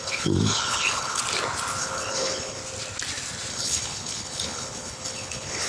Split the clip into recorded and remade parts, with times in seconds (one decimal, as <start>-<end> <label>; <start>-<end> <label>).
0.0-1.2 remade; 1.2-1.8 recorded; 1.8-2.6 remade; 2.6-3.5 recorded; 3.5-5.7 remade